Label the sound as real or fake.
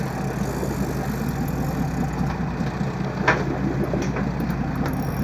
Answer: real